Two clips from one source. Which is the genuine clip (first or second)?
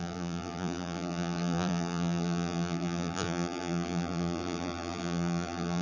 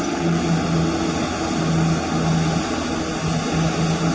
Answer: second